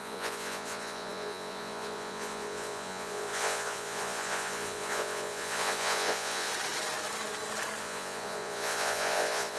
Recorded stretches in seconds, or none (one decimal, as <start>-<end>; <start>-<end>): 6.5-7.8